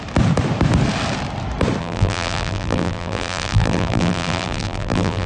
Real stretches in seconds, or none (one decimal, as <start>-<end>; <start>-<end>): 0.0-1.8